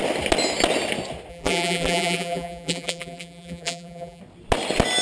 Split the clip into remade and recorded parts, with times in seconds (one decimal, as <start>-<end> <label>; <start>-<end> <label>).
0.0-1.3 recorded; 1.3-4.2 remade; 4.2-5.0 recorded